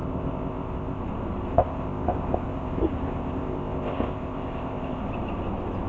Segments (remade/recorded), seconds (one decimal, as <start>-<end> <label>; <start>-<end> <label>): 0.0-1.0 remade; 1.0-1.5 recorded; 1.5-5.0 remade; 5.0-5.9 recorded